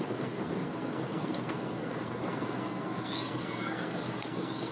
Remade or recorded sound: remade